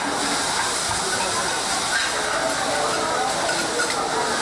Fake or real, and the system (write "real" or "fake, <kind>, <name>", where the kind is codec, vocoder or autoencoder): real